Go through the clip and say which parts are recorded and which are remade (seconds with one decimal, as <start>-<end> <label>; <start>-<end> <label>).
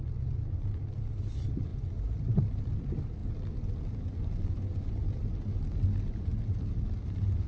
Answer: 0.0-7.5 recorded